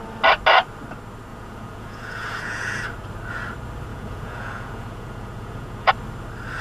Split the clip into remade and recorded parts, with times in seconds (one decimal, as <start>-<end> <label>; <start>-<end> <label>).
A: 0.0-1.3 recorded; 1.3-2.8 remade; 2.8-3.9 recorded; 3.9-5.9 remade; 5.9-6.6 recorded